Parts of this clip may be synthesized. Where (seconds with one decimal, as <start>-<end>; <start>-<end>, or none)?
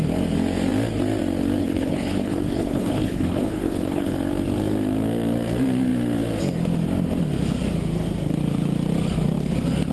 1.6-4.1